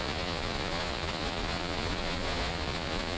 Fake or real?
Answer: fake